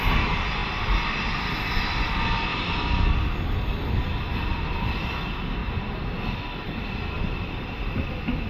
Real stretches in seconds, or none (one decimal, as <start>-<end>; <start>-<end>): 0.0-2.5; 3.1-5.6; 8.1-8.5